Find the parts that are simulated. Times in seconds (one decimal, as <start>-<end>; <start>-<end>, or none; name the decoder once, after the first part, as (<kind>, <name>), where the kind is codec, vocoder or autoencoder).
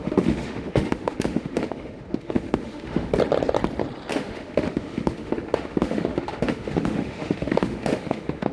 0.0-3.1 (autoencoder, DAC-VAE); 4.1-8.5